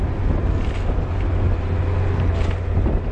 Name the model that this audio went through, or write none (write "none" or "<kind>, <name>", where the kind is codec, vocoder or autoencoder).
none